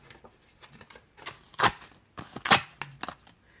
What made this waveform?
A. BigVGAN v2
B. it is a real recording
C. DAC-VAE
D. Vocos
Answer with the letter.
B